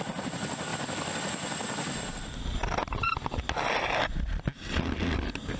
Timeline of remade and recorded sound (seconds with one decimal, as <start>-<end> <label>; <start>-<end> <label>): 0.0-5.6 recorded

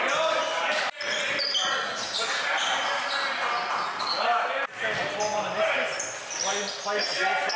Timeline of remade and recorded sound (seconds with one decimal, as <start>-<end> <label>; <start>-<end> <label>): 0.0-7.6 recorded